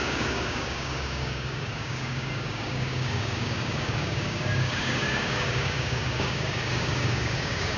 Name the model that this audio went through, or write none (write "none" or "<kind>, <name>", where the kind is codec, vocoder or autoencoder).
codec, DAC